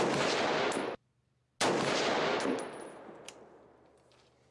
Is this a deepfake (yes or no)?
no